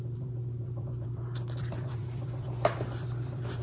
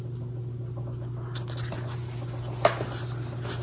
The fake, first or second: first